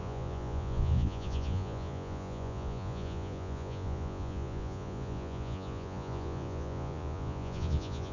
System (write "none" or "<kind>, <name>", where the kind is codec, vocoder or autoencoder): vocoder, Vocos